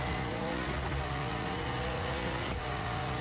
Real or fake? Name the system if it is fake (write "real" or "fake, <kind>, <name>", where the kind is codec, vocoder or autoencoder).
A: fake, vocoder, Vocos